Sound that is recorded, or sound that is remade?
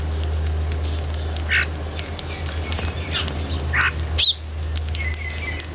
recorded